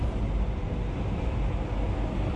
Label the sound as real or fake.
real